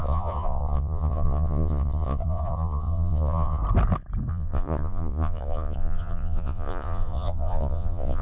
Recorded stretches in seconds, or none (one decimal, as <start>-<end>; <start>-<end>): 3.6-4.3